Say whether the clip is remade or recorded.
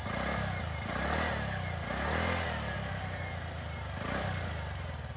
recorded